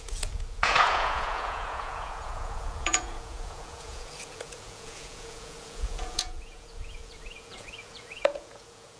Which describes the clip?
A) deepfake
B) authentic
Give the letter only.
A